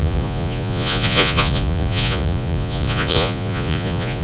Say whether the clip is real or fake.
fake